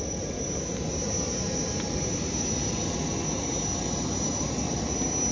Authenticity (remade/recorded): recorded